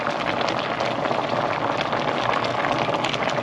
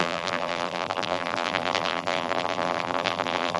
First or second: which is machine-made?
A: second